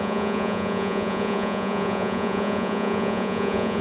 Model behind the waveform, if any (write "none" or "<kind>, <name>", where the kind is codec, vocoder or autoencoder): vocoder, Vocos